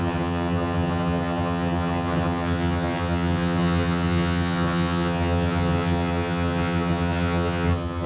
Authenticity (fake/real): fake